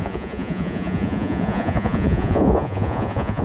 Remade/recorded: remade